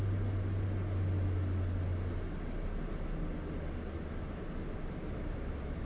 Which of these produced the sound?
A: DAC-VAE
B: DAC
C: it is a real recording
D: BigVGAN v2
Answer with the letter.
C